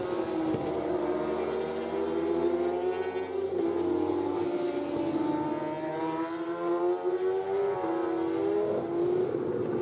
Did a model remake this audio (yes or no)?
no